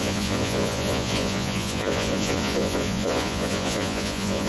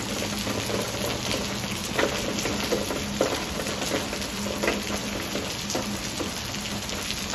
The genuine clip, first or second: second